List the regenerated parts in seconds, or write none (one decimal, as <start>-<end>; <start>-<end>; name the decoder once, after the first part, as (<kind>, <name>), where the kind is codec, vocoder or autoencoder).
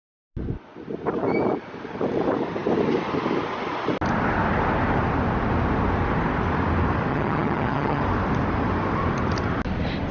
7.1-8.0 (vocoder, HiFi-GAN)